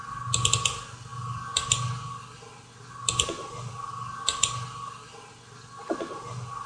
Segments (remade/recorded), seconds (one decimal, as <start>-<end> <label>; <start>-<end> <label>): 0.0-6.7 recorded